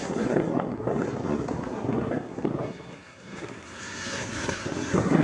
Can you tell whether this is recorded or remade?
remade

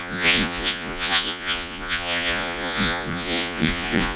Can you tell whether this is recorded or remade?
remade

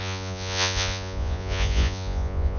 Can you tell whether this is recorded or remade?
remade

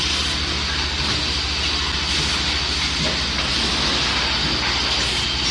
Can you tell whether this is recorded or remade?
recorded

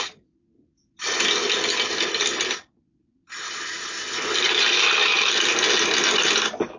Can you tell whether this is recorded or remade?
recorded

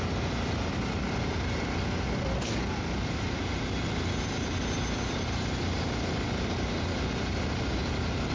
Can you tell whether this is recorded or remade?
recorded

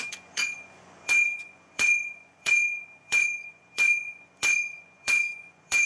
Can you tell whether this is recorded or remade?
remade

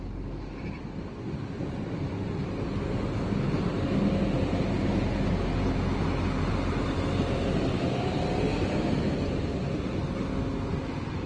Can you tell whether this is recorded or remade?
recorded